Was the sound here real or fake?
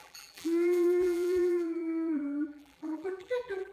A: fake